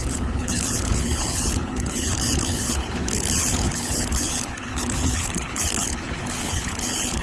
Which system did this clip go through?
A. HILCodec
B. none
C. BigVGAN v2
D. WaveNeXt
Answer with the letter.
A